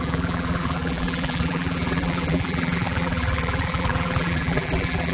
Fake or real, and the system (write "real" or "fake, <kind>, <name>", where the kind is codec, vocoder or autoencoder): fake, vocoder, BigVGAN v2